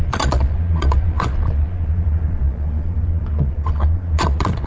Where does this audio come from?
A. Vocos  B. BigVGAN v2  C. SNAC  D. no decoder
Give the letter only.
A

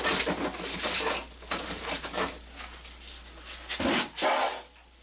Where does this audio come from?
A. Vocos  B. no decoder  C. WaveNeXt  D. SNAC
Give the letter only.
B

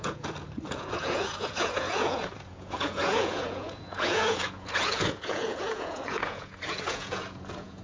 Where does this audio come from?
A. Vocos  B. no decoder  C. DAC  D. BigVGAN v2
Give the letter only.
A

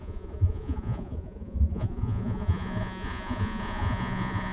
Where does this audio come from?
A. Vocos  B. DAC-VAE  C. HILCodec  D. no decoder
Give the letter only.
A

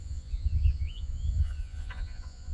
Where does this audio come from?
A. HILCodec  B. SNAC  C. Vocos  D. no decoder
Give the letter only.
C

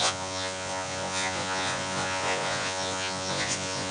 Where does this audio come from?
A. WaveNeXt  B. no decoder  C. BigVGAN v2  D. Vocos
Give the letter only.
D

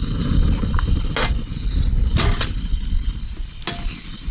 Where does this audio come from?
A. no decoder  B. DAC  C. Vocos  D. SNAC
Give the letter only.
A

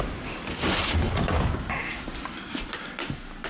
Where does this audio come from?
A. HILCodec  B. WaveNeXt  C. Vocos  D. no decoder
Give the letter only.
D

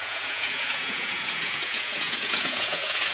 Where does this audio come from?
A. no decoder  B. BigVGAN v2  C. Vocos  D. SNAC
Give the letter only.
C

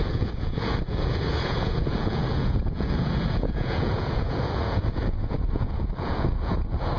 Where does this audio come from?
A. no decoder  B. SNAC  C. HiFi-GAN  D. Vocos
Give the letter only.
D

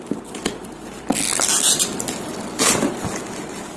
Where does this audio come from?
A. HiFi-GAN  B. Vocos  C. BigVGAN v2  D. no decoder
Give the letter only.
D